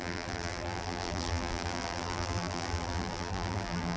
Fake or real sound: fake